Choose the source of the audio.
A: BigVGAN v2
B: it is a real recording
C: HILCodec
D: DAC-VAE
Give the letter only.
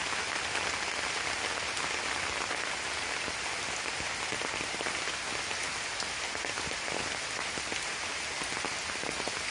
B